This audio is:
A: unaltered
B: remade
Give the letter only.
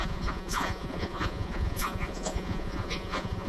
B